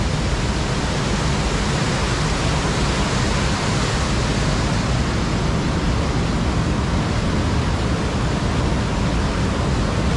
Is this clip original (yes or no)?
yes